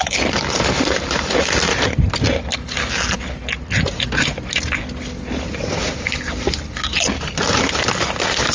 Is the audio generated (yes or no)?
no